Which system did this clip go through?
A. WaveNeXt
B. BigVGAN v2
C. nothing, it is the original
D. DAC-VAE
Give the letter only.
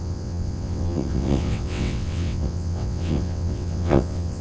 A